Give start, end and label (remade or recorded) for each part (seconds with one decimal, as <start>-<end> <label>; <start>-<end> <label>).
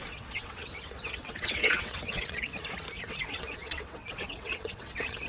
0.0-2.5 remade; 2.5-3.0 recorded; 3.0-5.3 remade